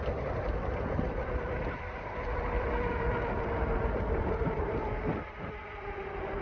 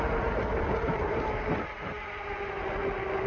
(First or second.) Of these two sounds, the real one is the second